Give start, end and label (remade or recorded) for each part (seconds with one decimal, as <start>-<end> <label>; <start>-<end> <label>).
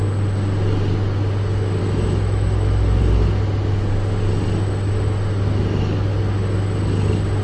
0.0-1.8 recorded; 1.8-3.0 remade; 3.0-7.4 recorded